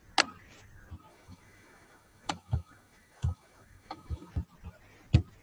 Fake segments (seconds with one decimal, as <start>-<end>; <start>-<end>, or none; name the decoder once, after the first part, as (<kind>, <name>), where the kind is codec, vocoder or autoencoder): 1.1-4.3 (autoencoder, DAC-VAE)